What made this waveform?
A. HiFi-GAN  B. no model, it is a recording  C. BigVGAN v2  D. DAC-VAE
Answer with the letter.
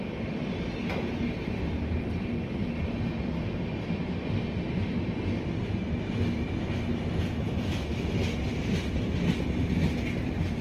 B